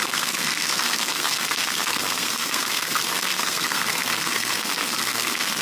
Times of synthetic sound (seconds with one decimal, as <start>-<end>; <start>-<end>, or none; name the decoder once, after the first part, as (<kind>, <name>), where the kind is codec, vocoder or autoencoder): 0.0-5.6 (codec, SNAC)